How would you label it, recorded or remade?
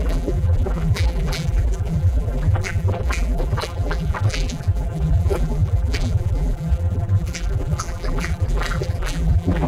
remade